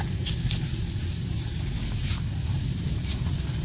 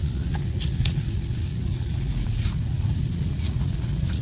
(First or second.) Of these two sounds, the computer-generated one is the second